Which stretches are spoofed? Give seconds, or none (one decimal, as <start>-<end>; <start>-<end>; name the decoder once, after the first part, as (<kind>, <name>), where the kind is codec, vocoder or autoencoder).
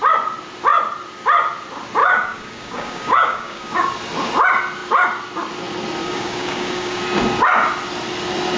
2.0-3.7 (codec, DAC); 6.0-7.0